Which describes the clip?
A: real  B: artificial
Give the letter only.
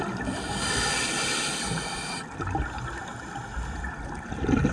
A